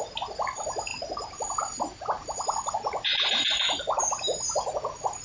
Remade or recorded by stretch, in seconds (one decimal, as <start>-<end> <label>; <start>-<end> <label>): 0.0-5.2 recorded